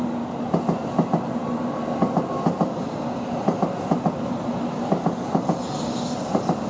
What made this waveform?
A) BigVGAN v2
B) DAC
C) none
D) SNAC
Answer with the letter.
C